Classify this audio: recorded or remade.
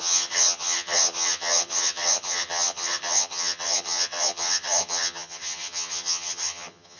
remade